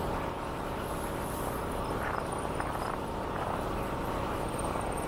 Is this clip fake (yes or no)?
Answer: no